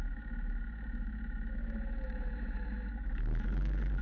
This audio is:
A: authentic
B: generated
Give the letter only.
B